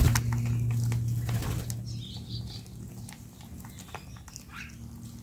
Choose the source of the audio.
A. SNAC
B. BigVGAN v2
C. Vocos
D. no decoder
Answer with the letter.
D